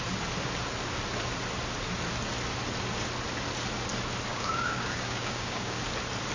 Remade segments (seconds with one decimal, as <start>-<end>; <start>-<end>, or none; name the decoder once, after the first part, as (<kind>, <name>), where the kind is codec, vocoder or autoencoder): 4.3-5.8 (codec, DAC)

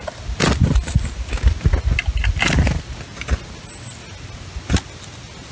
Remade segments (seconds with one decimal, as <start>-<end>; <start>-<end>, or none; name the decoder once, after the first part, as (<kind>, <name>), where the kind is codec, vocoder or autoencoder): none